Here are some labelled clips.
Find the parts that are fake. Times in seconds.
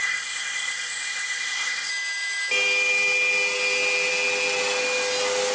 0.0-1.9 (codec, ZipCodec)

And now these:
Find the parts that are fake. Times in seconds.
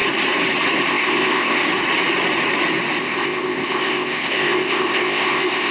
0.9-1.6 (codec, ZipCodec); 3.0-5.7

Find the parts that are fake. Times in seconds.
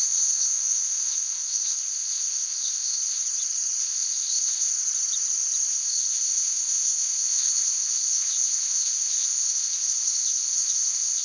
0.0-3.2 (codec, ZipCodec); 3.8-4.7; 5.7-11.2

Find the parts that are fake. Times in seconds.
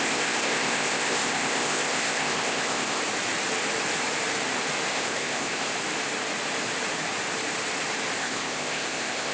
0.0-3.0 (codec, ZipCodec); 4.9-5.7; 8.2-9.3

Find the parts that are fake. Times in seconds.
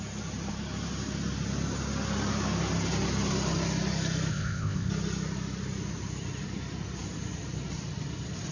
4.3-4.9 (codec, ZipCodec)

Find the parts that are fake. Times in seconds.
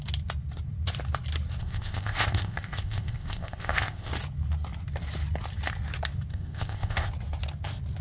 1.6-4.1 (codec, ZipCodec); 6.3-7.1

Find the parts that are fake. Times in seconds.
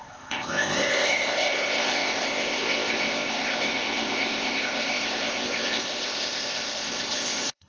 0.0-7.7 (codec, ZipCodec)